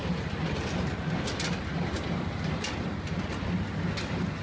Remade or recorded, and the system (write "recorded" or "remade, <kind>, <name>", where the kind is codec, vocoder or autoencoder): recorded